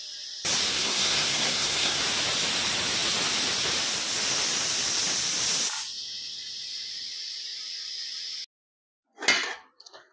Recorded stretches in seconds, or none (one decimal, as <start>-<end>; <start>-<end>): 0.0-0.7; 2.0-10.1